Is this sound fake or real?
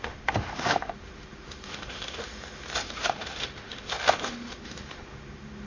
fake